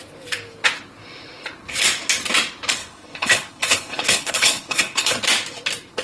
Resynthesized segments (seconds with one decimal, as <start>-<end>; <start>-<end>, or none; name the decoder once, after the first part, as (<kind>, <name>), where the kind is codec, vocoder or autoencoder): 2.8-5.1 (codec, HILCodec)